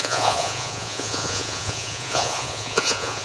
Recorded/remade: remade